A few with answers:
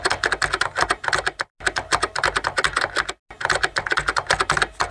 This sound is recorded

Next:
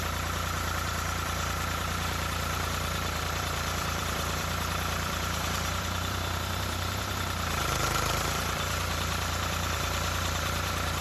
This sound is remade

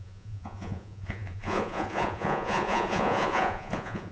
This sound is remade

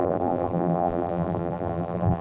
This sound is remade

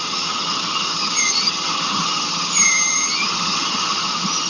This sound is remade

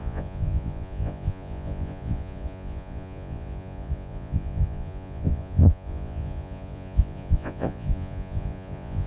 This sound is remade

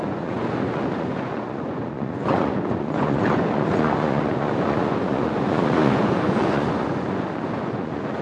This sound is remade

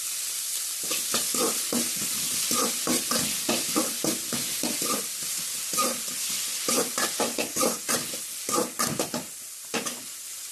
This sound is recorded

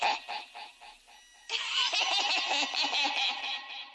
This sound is recorded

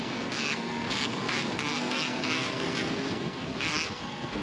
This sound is remade